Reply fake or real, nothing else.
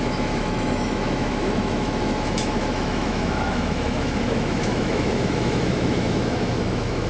fake